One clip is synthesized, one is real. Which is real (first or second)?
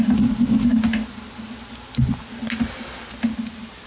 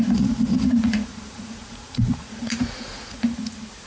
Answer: first